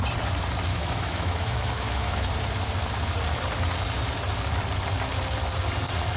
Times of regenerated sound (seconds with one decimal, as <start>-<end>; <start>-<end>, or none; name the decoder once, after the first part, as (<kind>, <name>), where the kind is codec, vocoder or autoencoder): 0.7-2.3 (autoencoder, DAC-VAE)